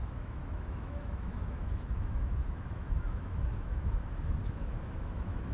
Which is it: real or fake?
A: fake